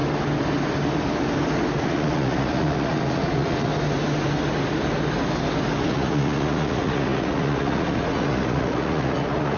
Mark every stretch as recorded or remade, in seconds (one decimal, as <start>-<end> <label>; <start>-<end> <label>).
0.0-1.8 recorded; 1.8-3.7 remade; 3.7-5.8 recorded; 5.8-9.6 remade